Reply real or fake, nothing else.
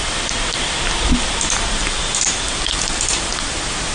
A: real